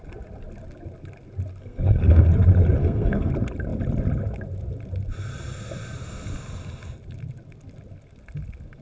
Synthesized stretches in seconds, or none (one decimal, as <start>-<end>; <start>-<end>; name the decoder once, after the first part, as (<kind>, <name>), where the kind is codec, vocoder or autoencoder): 1.6-2.3 (codec, SNAC); 2.8-3.3